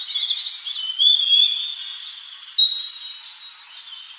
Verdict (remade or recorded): recorded